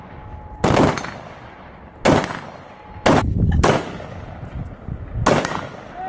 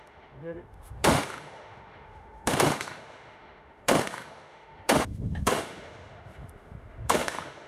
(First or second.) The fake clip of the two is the second